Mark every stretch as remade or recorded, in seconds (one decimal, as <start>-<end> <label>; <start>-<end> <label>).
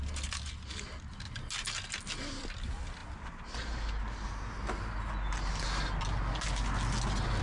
0.0-7.4 recorded